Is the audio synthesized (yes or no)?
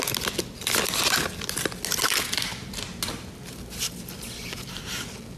no